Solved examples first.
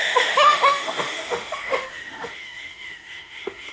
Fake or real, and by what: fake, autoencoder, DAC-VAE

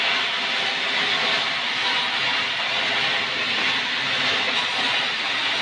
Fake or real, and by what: real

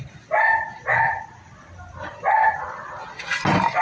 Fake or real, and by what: real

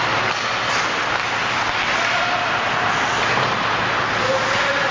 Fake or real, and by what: real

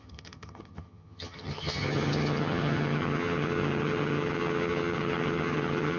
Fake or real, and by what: fake, vocoder, HiFi-GAN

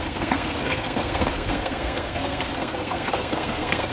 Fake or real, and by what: fake, codec, SNAC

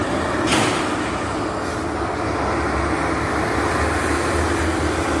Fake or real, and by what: real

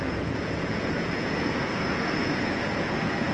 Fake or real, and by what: fake, vocoder, Vocos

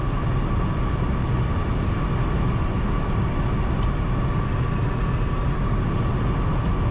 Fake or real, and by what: real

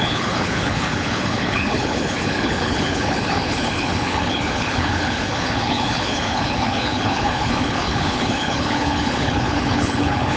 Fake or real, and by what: fake, codec, HILCodec